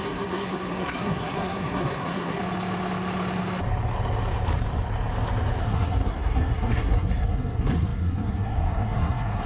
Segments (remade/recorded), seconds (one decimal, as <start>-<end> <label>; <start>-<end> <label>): 0.0-2.4 remade; 2.4-5.6 recorded; 5.6-9.5 remade